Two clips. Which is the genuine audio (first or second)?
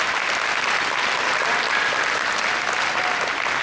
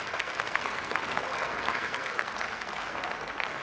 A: first